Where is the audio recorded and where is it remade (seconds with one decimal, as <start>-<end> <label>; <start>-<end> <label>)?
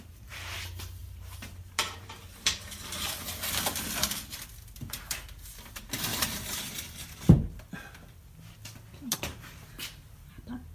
0.0-1.0 recorded; 1.0-2.9 remade; 2.9-6.1 recorded; 6.1-6.6 remade; 6.6-10.7 recorded